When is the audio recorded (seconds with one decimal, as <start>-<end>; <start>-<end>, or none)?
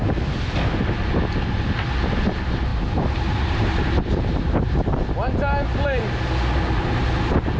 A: 0.0-2.7; 4.9-7.6